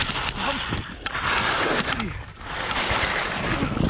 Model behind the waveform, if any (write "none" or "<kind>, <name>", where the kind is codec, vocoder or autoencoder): none